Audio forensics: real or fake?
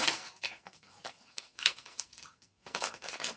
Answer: fake